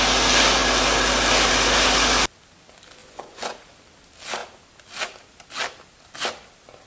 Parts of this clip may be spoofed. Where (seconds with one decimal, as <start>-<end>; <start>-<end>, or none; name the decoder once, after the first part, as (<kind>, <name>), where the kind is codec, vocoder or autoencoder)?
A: 3.0-3.7 (vocoder, Vocos)

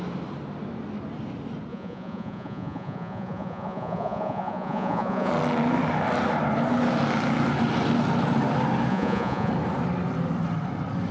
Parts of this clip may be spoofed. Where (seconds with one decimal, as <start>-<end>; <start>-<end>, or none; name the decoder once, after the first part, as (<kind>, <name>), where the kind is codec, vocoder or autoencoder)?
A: 1.7-5.3 (vocoder, Vocos); 8.9-9.5

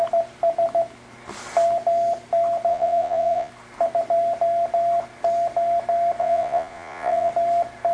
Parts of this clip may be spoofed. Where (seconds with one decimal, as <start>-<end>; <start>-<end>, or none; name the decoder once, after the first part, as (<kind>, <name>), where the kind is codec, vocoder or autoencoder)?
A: 2.7-3.5 (vocoder, Vocos); 6.2-7.3

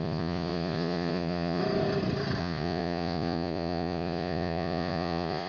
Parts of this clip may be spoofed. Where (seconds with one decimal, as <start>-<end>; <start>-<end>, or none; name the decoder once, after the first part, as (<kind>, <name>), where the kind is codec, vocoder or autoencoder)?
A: 0.0-1.6 (vocoder, Vocos); 2.4-5.5

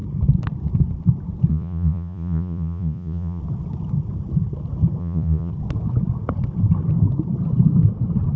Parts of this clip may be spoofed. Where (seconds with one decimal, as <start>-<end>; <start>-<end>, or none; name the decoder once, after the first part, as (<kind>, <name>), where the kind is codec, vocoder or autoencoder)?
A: 1.5-3.4 (vocoder, Vocos); 5.0-5.5

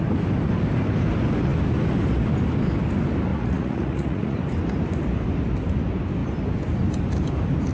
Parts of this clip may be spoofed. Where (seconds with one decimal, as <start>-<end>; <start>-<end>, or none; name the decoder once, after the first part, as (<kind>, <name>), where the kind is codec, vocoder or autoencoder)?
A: 3.3-4.4 (vocoder, Vocos)